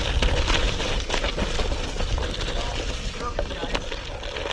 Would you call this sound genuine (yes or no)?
yes